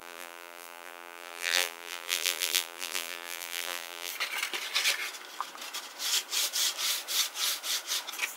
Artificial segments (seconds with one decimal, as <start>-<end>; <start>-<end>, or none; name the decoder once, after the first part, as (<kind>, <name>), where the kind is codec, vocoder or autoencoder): 0.0-4.1 (vocoder, BigVGAN v2)